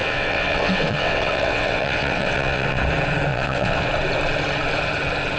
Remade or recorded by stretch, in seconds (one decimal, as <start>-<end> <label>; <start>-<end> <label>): 0.0-2.8 remade; 2.8-3.3 recorded; 3.3-3.9 remade; 3.9-5.4 recorded